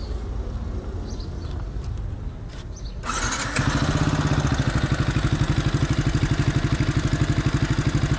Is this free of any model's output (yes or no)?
yes